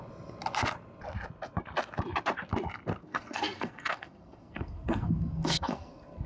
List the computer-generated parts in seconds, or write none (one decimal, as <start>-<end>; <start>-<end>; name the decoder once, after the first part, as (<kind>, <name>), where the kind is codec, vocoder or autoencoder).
3.0-6.3 (codec, SNAC)